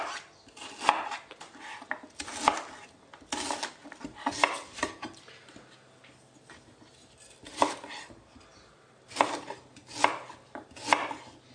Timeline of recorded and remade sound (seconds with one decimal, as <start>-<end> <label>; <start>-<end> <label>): 0.0-8.5 recorded; 8.5-9.4 remade; 9.4-11.5 recorded